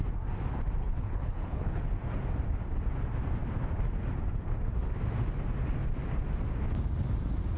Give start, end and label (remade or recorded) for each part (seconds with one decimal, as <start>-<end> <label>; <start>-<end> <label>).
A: 0.0-0.8 recorded; 0.8-1.8 remade; 1.8-7.6 recorded